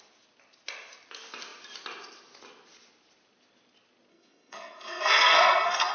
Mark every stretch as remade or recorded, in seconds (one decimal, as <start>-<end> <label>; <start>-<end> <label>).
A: 0.0-4.1 recorded; 4.1-5.9 remade